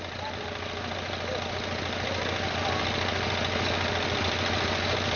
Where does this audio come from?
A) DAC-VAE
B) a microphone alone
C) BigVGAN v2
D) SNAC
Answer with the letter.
B